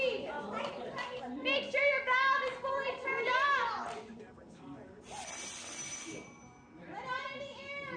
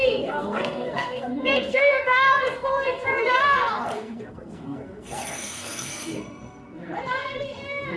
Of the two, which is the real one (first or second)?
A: first